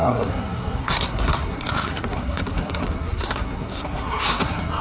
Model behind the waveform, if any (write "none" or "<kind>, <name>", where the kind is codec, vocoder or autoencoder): codec, SNAC